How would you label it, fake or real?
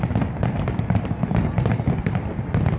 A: real